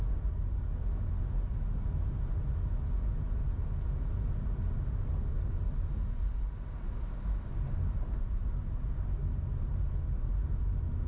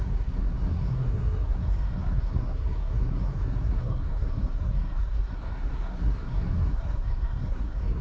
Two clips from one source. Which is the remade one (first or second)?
second